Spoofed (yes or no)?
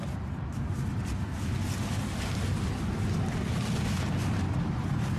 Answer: no